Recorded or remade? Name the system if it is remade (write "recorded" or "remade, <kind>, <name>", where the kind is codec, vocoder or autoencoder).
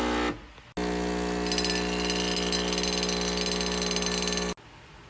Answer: recorded